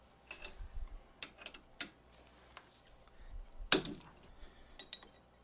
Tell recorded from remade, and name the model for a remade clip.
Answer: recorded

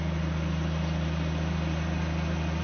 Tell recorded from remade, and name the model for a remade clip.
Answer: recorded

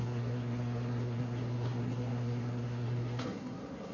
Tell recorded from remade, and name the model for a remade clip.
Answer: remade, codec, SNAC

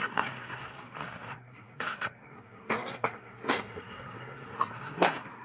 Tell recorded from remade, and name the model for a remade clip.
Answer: remade, codec, SNAC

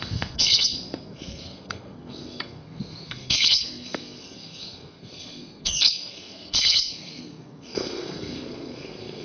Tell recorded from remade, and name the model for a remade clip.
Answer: remade, codec, SNAC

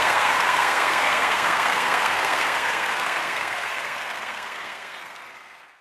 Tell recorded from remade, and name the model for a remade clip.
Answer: remade, codec, SNAC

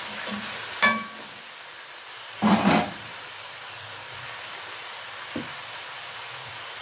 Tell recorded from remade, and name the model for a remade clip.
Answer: recorded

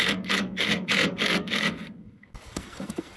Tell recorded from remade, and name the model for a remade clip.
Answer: remade, codec, SNAC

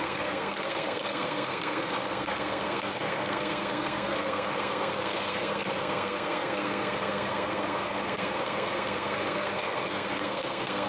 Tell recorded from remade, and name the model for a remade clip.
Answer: remade, codec, SNAC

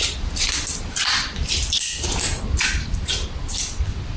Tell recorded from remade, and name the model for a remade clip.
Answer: recorded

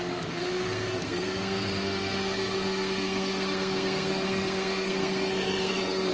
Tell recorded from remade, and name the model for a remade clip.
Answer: remade, codec, SNAC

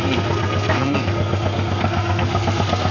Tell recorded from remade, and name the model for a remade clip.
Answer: remade, codec, SNAC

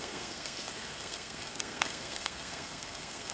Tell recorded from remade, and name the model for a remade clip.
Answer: remade, codec, SNAC